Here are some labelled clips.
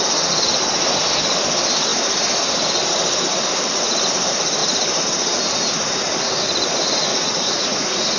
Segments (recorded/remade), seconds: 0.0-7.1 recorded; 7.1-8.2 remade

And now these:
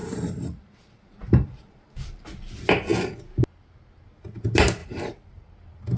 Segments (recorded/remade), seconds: 0.0-2.2 remade; 2.2-4.8 recorded; 4.8-5.5 remade; 5.5-6.0 recorded